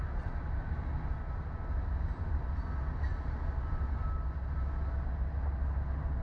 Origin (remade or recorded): recorded